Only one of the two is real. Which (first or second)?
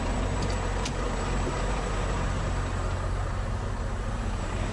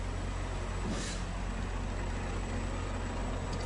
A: second